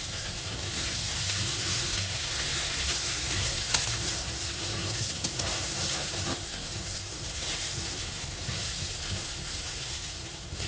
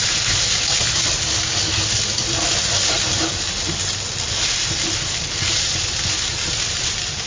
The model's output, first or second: first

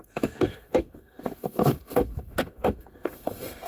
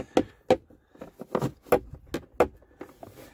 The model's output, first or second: first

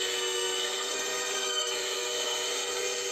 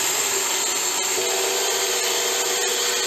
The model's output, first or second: first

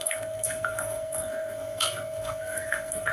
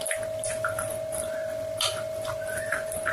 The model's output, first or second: first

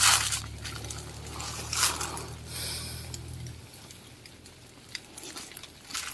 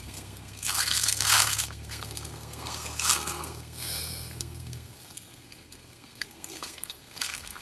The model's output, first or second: second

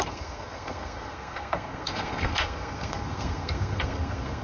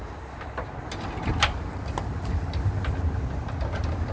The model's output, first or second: first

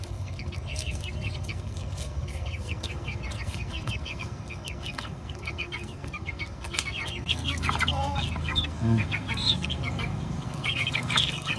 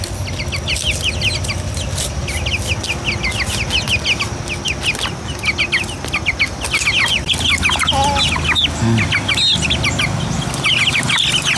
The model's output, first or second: first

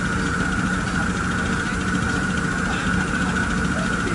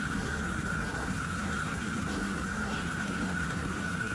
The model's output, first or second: second